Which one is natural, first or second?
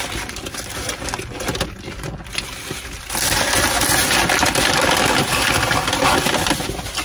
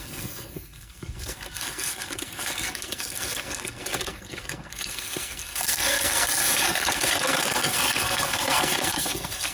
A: first